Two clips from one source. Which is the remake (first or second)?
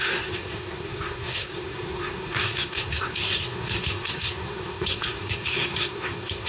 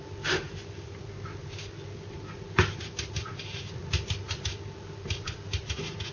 first